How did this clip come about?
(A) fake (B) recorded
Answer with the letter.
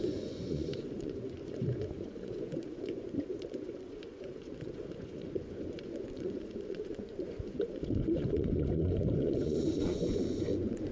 A